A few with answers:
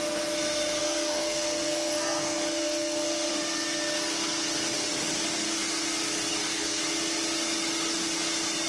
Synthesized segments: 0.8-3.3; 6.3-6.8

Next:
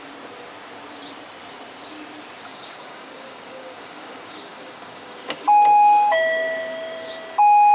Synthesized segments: 2.5-7.1

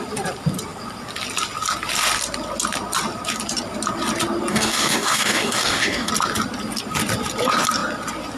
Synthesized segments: 4.5-6.1

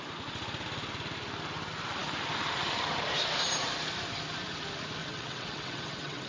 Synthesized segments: 5.0-6.3

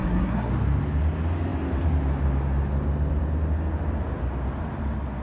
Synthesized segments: 0.0-0.5